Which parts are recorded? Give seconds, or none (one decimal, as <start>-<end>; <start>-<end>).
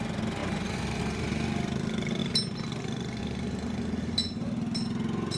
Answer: 0.0-5.4